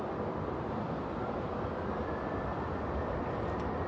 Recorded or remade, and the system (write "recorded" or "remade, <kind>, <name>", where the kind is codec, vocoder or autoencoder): recorded